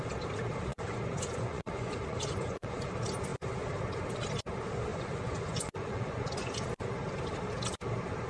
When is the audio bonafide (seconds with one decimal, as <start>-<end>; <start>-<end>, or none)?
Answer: 0.0-0.7; 2.9-4.9; 6.7-8.3